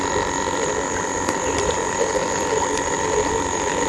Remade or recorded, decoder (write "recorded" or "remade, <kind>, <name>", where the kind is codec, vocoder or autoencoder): recorded